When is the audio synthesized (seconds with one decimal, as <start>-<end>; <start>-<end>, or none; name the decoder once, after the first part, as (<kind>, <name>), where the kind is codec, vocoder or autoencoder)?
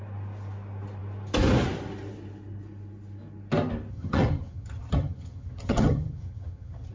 3.9-6.9 (vocoder, HiFi-GAN)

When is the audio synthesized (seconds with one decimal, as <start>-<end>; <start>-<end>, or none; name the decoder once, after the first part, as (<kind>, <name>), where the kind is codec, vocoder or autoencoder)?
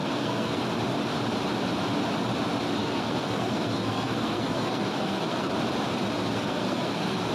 0.0-0.6 (codec, SNAC); 2.8-5.5; 6.2-7.3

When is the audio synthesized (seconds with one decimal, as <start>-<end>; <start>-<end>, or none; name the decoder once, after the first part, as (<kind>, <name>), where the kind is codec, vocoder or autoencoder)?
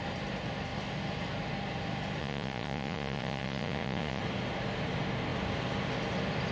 2.2-4.2 (vocoder, Vocos)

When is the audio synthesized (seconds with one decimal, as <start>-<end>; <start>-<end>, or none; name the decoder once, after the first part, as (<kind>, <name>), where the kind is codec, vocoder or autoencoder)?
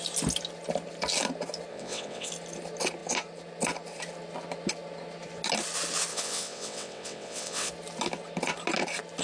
1.7-2.3 (vocoder, WaveNeXt); 6.1-7.7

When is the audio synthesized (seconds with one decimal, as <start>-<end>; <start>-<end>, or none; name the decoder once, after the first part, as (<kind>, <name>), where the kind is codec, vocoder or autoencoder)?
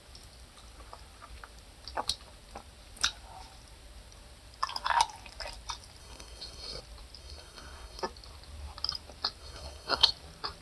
6.0-6.8 (codec, SNAC); 7.2-8.0; 9.4-10.1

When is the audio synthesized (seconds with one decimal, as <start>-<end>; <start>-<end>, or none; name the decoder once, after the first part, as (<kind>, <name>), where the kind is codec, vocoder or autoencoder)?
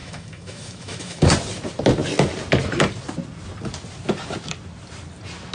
0.0-1.2 (autoencoder, DAC-VAE)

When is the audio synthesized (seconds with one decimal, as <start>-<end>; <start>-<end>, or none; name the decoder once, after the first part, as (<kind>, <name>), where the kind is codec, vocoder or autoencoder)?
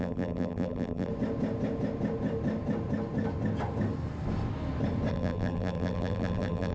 0.0-1.1 (vocoder, BigVGAN v2); 5.1-6.7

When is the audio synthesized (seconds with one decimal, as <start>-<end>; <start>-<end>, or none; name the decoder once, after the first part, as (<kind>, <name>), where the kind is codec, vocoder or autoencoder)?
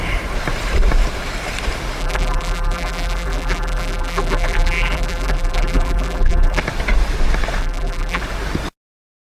2.0-6.6 (vocoder, BigVGAN v2); 7.6-8.2